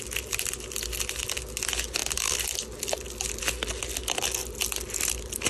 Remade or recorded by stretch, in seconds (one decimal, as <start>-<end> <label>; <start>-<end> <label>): 0.0-5.5 recorded